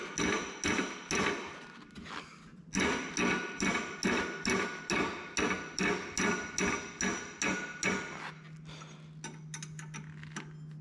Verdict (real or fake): real